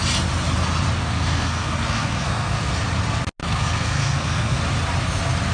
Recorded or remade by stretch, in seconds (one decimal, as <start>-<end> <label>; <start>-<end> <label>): 0.0-1.0 recorded; 1.0-2.7 remade; 2.7-3.4 recorded; 3.4-4.6 remade; 4.6-5.5 recorded